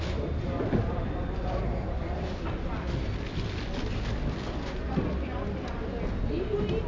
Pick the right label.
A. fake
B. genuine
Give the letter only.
B